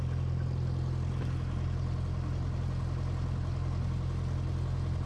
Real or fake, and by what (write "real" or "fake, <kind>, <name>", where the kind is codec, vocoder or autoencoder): real